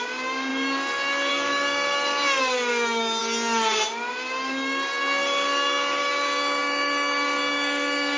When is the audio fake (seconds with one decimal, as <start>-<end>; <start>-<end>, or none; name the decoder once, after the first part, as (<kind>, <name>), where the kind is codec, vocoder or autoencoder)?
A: 0.0-3.2 (codec, DAC); 4.1-8.2